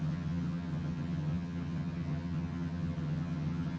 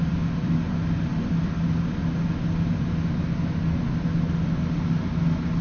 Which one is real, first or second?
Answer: second